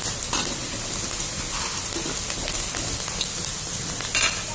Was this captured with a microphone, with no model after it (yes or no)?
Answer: yes